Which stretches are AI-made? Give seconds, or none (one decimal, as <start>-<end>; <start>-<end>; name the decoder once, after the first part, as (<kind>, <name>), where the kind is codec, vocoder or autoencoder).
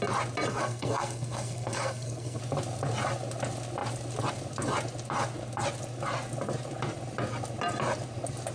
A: 0.5-2.4 (codec, SNAC)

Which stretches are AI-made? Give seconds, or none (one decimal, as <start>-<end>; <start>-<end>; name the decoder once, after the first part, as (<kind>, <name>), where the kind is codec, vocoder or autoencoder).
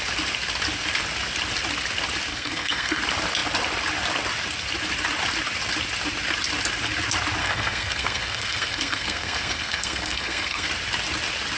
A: 2.3-3.0 (codec, SNAC); 7.4-10.7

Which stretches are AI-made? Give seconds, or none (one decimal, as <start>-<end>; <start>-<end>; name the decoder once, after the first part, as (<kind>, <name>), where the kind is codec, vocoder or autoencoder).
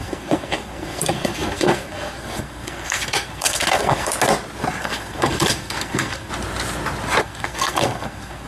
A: 0.0-4.1 (codec, SNAC); 4.8-6.3; 7.2-8.5